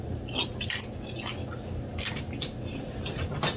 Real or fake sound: real